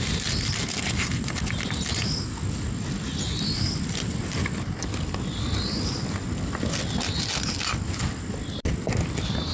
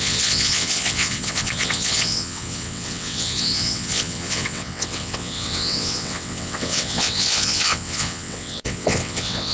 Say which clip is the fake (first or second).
second